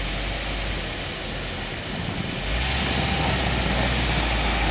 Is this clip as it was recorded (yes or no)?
yes